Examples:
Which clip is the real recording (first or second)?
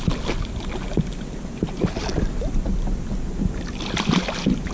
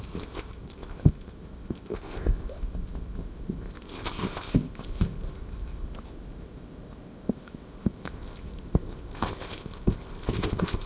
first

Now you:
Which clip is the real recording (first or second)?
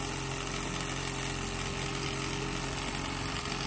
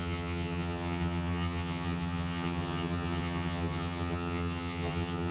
first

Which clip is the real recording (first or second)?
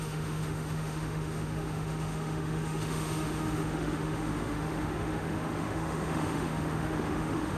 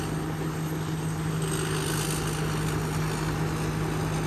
second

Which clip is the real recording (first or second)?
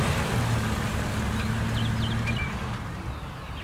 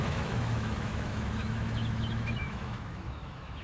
first